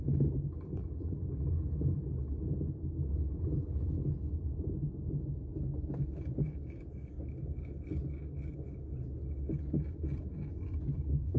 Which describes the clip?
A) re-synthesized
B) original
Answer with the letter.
B